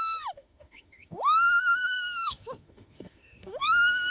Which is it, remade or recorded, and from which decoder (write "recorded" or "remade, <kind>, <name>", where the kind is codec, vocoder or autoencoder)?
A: remade, autoencoder, DAC-VAE